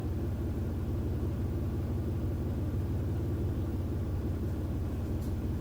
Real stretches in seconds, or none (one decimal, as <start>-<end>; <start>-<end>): 0.0-5.6